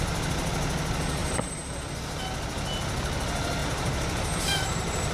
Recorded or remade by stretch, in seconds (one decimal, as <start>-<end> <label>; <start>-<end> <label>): 0.0-1.2 recorded; 1.2-1.9 remade; 1.9-3.6 recorded; 3.6-5.1 remade